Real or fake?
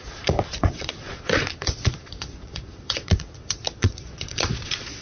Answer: fake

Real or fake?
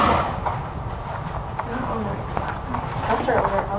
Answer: real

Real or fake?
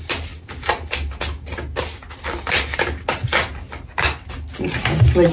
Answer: real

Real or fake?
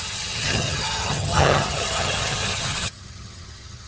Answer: fake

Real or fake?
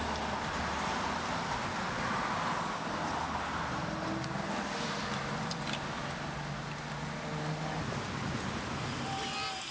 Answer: real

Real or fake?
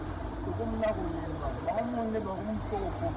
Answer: real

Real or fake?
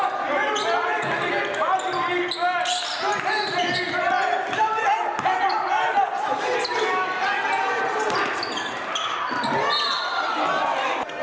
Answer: real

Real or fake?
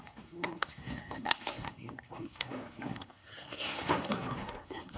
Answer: fake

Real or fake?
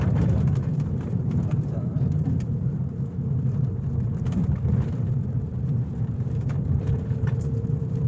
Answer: fake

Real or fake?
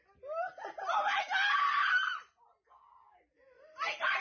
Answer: real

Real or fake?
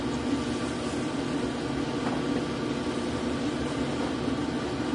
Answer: real